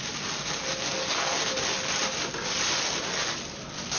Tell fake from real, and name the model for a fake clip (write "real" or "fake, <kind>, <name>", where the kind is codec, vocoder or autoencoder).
real